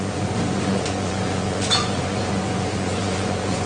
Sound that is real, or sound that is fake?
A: fake